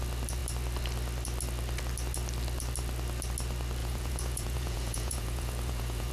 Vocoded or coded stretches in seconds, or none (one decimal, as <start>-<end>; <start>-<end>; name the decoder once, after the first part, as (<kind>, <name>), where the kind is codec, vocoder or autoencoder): 3.8-6.1 (vocoder, Vocos)